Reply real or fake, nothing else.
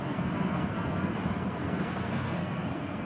fake